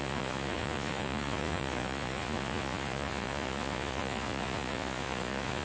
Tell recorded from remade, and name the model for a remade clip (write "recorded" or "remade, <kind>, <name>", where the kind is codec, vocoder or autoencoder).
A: remade, vocoder, Vocos